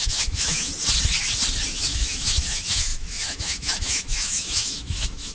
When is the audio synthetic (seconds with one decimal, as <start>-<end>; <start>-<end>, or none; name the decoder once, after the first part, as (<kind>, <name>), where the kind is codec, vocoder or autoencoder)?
0.0-0.7 (autoencoder, DAC-VAE); 1.7-5.3